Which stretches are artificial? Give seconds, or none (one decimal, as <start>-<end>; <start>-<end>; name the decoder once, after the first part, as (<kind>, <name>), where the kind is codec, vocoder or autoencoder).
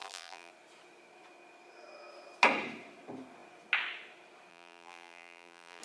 0.0-0.5 (vocoder, BigVGAN v2); 4.5-5.8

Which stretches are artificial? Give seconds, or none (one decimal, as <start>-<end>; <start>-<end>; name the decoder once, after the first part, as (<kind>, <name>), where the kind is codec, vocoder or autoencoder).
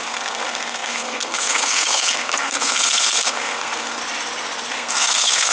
0.0-4.0 (codec, SNAC); 4.7-5.5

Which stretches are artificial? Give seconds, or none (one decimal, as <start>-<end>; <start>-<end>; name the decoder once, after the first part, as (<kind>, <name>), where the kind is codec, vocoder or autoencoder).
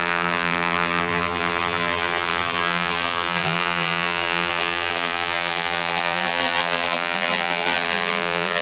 0.0-8.6 (vocoder, BigVGAN v2)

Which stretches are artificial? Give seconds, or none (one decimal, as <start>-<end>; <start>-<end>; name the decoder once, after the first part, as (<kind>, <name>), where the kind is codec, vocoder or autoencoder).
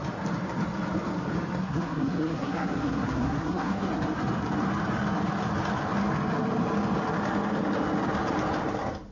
1.6-3.9 (codec, SNAC)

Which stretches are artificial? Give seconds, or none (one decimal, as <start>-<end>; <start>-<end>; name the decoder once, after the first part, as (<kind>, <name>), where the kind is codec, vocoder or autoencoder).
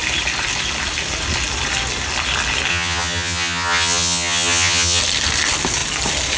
2.7-5.0 (vocoder, HiFi-GAN)